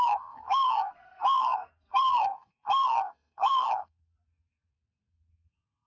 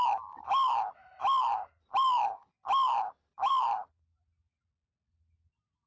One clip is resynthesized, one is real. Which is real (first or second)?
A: second